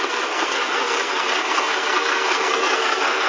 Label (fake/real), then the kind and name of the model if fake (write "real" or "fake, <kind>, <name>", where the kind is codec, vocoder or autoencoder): fake, codec, SNAC